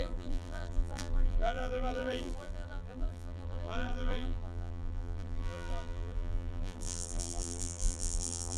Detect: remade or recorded remade